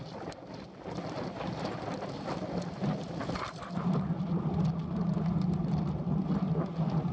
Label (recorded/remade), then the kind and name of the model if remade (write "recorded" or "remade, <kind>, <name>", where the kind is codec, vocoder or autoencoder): recorded